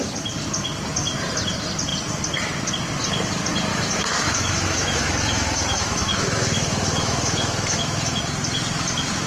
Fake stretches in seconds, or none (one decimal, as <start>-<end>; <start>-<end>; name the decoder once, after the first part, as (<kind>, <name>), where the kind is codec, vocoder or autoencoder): 3.7-8.2 (autoencoder, DAC-VAE)